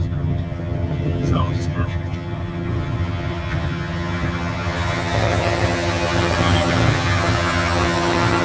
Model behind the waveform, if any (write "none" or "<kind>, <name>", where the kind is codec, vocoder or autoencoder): vocoder, HiFi-GAN